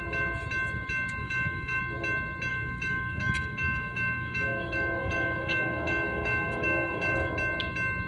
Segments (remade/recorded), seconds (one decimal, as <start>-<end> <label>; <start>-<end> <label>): 0.0-1.2 recorded; 1.2-1.8 remade; 1.8-2.5 recorded; 2.5-7.3 remade; 7.3-8.1 recorded